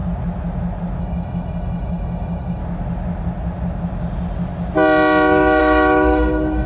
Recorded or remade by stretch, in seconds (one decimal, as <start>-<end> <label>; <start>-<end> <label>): 0.0-1.0 recorded; 1.0-2.6 remade; 2.6-5.6 recorded; 5.6-6.7 remade